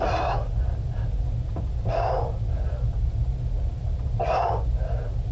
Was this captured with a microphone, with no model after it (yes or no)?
yes